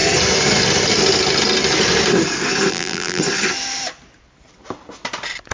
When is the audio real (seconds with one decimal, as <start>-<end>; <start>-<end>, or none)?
0.0-2.7; 3.2-5.5